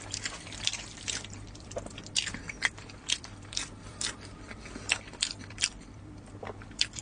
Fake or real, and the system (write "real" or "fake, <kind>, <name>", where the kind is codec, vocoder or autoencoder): fake, vocoder, BigVGAN v2